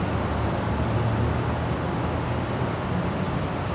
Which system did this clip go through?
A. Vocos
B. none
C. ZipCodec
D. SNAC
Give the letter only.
B